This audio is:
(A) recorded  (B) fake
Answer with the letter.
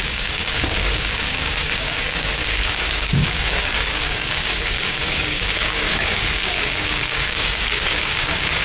B